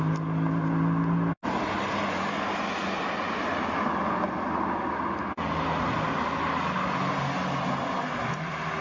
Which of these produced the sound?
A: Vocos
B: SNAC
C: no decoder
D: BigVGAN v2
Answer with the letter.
C